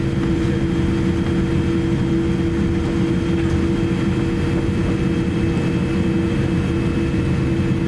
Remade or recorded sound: recorded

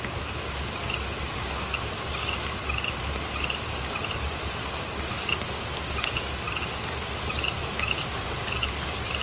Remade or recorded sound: recorded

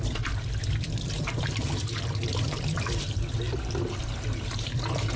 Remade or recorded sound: remade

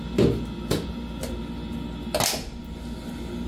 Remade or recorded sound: recorded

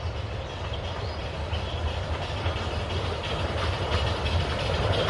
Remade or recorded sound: remade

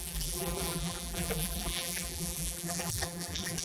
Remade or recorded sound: remade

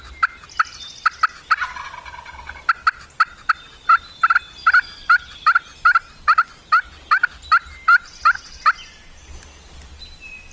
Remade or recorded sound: recorded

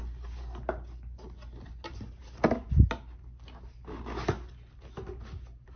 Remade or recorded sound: recorded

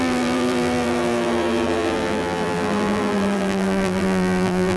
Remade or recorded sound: remade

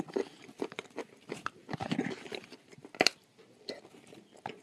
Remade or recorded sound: remade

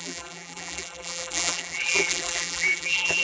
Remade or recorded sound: remade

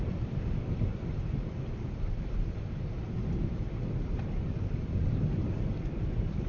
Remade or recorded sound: remade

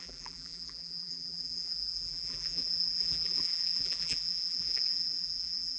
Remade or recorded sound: remade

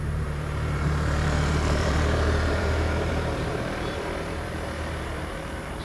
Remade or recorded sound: remade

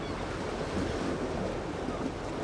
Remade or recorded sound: recorded